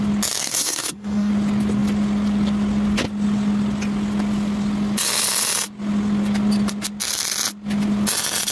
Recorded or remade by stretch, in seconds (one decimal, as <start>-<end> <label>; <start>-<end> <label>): 0.0-0.4 recorded; 0.4-1.3 remade; 1.3-8.5 recorded

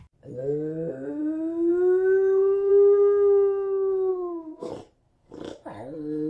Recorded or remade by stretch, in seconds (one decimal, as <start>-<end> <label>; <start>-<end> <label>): 0.0-4.1 recorded; 4.1-4.7 remade; 4.7-6.3 recorded

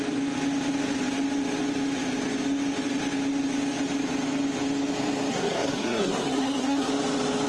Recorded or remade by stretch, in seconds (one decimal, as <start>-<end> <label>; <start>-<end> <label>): 0.0-5.3 recorded; 5.3-6.9 remade; 6.9-7.5 recorded